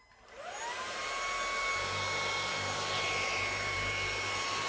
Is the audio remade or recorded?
recorded